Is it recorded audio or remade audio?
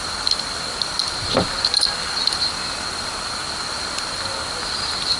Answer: recorded